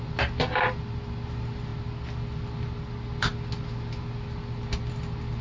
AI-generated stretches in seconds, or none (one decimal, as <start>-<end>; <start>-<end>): none